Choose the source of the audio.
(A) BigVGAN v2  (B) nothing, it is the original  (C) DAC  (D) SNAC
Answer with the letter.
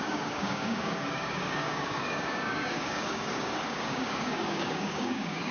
C